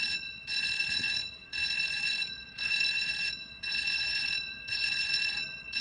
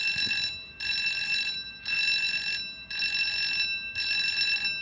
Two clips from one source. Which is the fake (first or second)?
first